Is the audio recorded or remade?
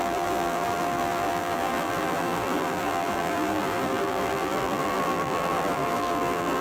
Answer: remade